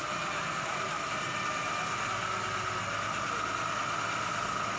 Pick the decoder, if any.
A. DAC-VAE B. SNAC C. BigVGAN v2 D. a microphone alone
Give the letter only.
D